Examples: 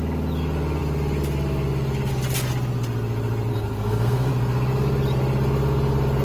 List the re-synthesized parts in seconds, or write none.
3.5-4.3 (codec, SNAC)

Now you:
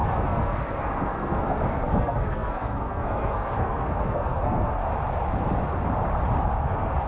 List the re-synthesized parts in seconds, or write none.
0.0-4.8 (codec, SNAC); 6.6-7.1

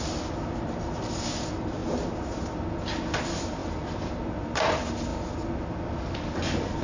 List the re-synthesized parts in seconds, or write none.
none